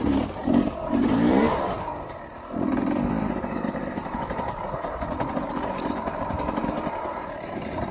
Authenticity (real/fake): fake